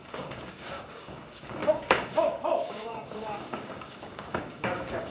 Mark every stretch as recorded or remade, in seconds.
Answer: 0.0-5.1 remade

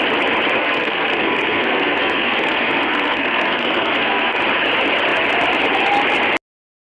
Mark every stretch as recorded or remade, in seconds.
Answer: 0.0-0.6 recorded; 0.6-4.4 remade; 4.4-6.8 recorded

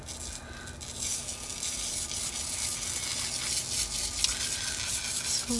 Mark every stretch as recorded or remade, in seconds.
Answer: 0.0-5.6 recorded

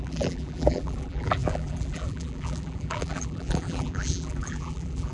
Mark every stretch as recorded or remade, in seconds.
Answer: 0.0-5.1 remade